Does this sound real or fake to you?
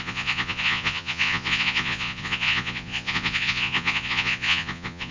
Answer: fake